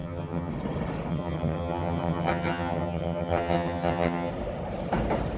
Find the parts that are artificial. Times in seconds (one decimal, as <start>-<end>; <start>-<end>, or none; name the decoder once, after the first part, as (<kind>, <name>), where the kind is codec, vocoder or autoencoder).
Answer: 0.0-0.5 (vocoder, HiFi-GAN); 1.1-4.3